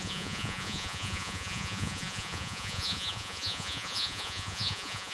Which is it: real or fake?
fake